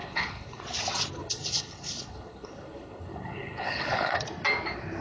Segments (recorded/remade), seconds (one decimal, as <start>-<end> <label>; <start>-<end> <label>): 0.0-0.6 remade; 0.6-1.2 recorded; 1.2-4.2 remade; 4.2-5.0 recorded